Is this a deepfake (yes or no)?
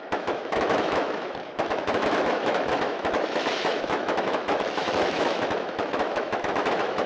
yes